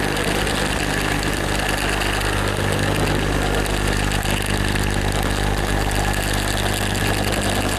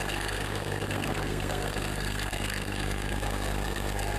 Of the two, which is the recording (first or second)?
first